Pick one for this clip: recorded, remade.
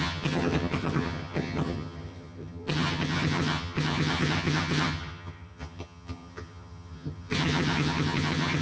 remade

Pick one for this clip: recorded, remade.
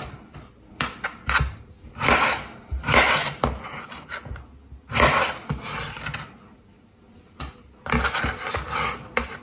recorded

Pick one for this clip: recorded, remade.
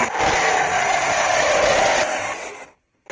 recorded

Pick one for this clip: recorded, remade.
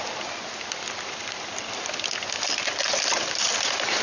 recorded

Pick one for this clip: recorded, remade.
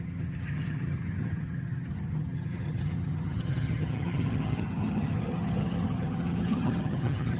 remade